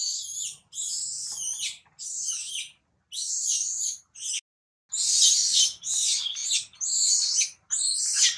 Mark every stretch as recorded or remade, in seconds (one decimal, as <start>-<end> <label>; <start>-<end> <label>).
0.0-8.4 recorded